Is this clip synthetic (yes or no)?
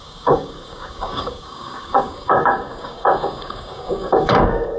yes